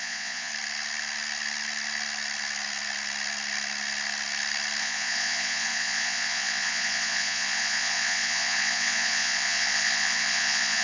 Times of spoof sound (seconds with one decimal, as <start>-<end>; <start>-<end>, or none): 0.0-0.5; 4.8-10.8